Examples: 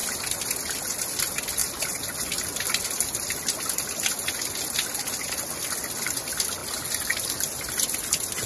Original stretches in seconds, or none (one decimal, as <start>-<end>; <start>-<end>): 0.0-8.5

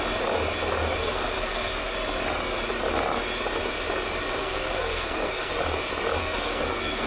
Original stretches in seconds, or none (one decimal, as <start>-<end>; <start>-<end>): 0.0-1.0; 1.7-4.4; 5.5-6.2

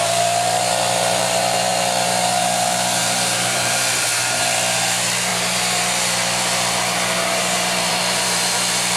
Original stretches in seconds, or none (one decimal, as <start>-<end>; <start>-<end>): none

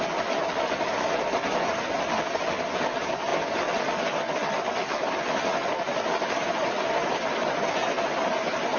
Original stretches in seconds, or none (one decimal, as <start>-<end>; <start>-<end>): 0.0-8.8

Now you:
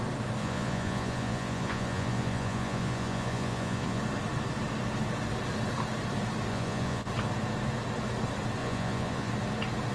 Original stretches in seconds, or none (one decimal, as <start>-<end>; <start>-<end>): 0.0-0.4; 4.0-6.5; 7.1-8.6; 9.3-9.9